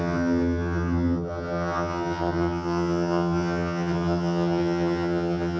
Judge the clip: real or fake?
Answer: fake